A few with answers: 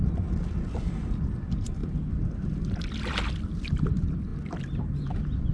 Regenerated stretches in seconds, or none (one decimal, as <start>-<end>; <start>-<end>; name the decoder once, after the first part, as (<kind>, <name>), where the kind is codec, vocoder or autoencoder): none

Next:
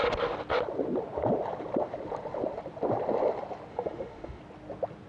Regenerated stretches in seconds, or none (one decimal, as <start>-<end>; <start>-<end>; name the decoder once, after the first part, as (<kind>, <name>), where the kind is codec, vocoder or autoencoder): 3.7-4.4 (autoencoder, DAC-VAE)

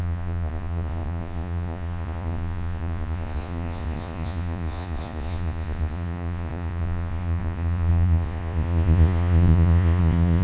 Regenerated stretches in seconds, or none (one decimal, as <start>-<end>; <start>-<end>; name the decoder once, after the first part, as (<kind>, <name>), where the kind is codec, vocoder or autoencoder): 0.0-10.4 (vocoder, Vocos)